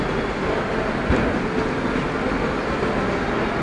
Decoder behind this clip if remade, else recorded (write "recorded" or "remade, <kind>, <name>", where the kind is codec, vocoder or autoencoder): recorded